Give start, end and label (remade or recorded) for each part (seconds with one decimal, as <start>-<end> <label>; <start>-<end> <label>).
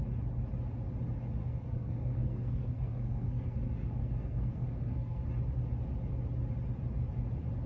0.0-1.4 recorded; 1.4-5.2 remade; 5.2-7.7 recorded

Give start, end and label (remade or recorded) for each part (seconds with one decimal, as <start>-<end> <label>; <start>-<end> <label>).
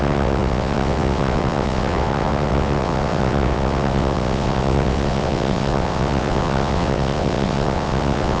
0.0-8.4 remade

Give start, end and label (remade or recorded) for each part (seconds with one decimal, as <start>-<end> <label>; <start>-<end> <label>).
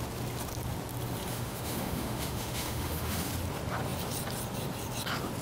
0.0-1.3 recorded; 1.3-3.3 remade; 3.3-5.4 recorded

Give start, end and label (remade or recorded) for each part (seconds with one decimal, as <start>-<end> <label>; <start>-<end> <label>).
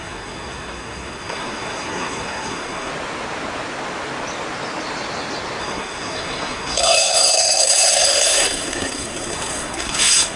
0.0-2.9 remade; 2.9-5.6 recorded; 5.6-10.4 remade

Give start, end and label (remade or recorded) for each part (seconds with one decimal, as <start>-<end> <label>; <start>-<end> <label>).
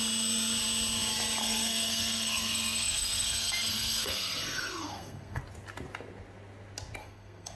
0.0-1.4 recorded; 1.4-5.4 remade; 5.4-7.0 recorded; 7.0-7.6 remade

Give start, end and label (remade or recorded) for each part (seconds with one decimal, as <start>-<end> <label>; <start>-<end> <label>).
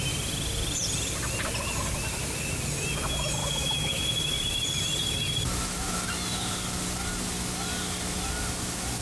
0.0-3.4 recorded; 3.4-4.0 remade; 4.0-9.0 recorded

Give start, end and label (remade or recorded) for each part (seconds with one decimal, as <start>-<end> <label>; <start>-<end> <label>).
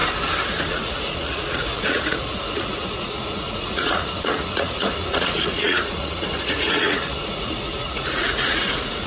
0.0-0.7 recorded; 0.7-9.1 remade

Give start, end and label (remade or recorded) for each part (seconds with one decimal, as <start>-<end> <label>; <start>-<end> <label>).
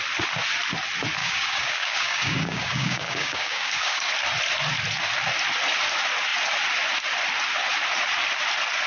0.0-1.2 recorded; 1.2-4.1 remade; 4.1-8.9 recorded